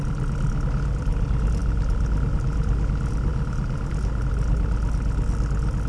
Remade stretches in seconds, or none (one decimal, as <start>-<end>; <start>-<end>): none